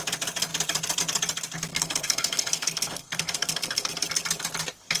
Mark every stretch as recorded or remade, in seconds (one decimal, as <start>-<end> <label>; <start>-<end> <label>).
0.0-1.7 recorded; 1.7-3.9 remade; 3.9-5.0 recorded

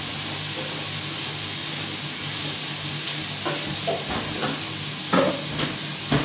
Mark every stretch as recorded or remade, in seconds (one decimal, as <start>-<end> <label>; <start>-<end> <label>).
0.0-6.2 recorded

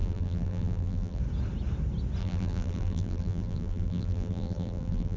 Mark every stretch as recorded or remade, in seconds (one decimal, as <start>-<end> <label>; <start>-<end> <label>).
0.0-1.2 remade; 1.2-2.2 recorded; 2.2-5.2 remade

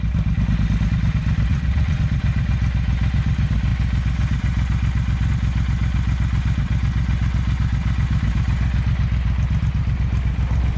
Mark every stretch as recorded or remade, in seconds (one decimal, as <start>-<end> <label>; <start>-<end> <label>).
0.0-1.5 recorded; 1.5-2.0 remade; 2.0-10.8 recorded

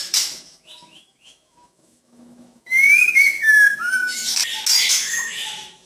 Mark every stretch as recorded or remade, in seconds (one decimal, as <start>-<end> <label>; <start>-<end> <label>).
0.0-4.4 remade; 4.4-4.9 recorded; 4.9-5.9 remade